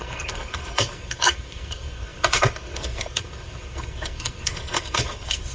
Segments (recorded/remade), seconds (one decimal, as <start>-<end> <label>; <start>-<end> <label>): 0.0-5.5 remade